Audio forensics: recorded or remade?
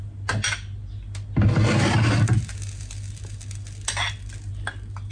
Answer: recorded